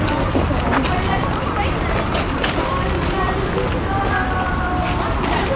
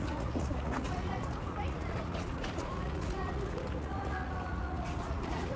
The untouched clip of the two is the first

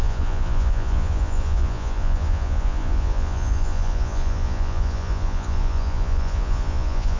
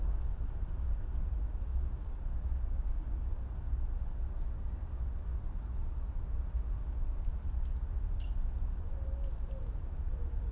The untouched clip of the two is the second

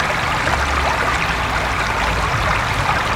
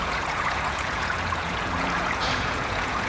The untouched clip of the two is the first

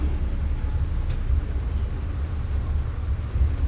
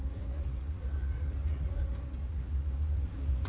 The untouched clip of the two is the first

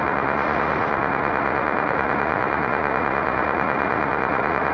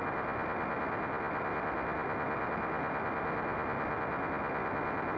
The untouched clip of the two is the second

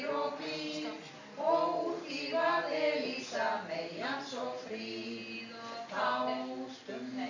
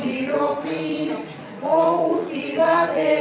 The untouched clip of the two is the first